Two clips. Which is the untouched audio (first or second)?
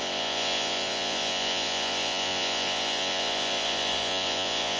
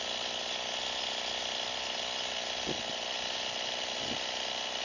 second